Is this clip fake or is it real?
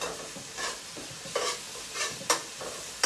real